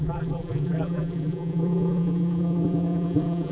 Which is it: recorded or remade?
remade